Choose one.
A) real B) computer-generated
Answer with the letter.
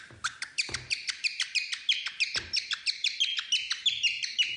A